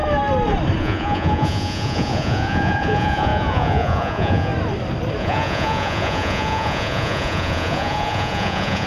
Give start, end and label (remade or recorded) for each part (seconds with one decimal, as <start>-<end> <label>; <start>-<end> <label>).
0.0-0.8 recorded; 0.8-4.5 remade; 4.5-5.2 recorded; 5.2-8.9 remade